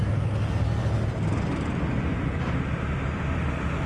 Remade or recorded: recorded